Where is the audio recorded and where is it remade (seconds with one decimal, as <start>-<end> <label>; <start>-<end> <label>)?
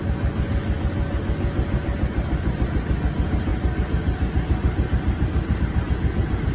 0.0-6.5 recorded